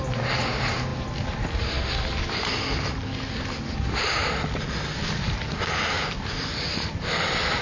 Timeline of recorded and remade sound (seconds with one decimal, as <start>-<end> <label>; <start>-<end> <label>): 0.0-7.6 recorded